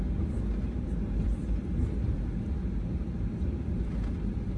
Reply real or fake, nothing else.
fake